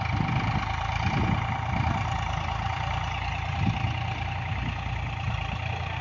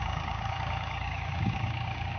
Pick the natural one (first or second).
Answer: first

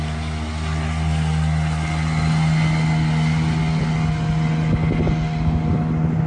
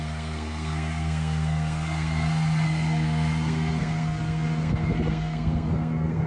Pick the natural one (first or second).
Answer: first